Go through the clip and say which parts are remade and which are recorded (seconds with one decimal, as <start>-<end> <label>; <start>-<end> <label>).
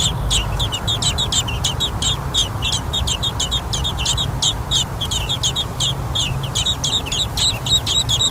0.0-2.4 recorded; 2.4-7.2 remade; 7.2-8.3 recorded